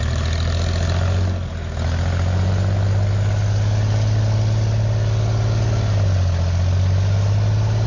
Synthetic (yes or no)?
no